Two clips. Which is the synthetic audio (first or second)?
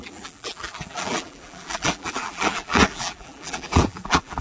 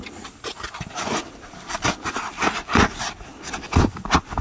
first